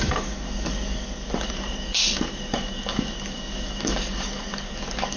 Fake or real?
fake